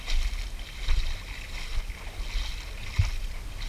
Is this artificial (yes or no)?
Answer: no